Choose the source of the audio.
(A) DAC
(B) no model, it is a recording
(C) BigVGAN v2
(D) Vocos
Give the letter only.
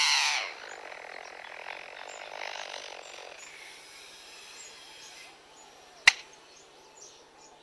B